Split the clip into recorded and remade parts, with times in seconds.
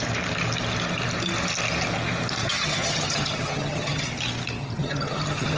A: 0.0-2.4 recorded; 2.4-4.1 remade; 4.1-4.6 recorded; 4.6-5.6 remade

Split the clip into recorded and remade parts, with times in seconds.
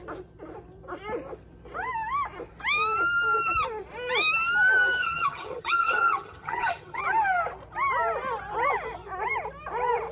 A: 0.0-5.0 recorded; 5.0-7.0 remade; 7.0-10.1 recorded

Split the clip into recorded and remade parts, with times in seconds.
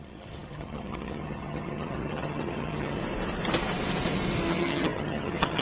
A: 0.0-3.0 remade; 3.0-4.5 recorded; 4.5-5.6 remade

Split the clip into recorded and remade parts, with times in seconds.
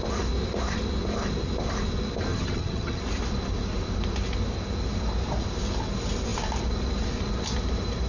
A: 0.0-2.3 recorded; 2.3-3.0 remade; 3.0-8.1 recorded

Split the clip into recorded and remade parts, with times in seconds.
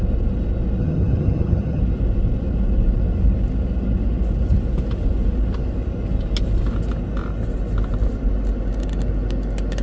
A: 0.0-0.8 recorded; 0.8-1.8 remade; 1.8-9.8 recorded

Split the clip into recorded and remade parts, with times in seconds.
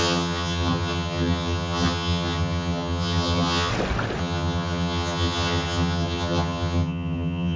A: 0.0-3.7 remade; 3.7-4.2 recorded; 4.2-7.6 remade